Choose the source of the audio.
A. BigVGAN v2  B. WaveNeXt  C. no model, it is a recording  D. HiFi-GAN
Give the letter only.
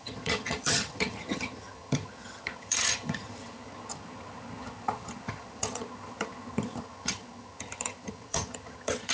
D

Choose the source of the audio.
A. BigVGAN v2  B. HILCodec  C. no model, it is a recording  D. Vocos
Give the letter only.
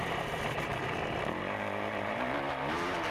A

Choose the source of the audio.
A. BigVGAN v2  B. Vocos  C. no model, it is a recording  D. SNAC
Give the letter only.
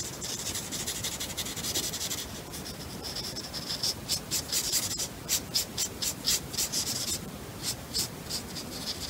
A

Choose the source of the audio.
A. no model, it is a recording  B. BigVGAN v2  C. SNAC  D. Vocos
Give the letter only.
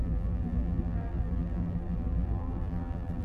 B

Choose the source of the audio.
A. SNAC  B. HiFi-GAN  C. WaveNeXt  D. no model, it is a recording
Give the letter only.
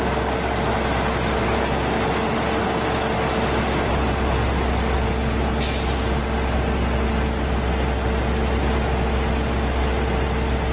D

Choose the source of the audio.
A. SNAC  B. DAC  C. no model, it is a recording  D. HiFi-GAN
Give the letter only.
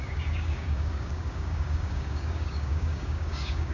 B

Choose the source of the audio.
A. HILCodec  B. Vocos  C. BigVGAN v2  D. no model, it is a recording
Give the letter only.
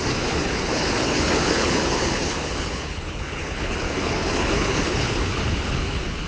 A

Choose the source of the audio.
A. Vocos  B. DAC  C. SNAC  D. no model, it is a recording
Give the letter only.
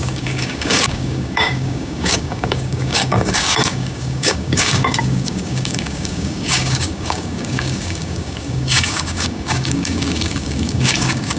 B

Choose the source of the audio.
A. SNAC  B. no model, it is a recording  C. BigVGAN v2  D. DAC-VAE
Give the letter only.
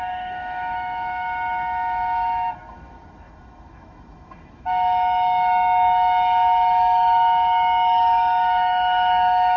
D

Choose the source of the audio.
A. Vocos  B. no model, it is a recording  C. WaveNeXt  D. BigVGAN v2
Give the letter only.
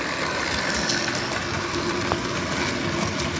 B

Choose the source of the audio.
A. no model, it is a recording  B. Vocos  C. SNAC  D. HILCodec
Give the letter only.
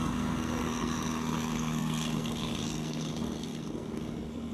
C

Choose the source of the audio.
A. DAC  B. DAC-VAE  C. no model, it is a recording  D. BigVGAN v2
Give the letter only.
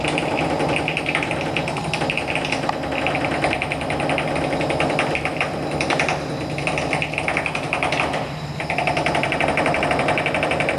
C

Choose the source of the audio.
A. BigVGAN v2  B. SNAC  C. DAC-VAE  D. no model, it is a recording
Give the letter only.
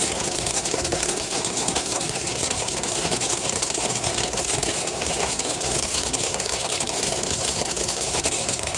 B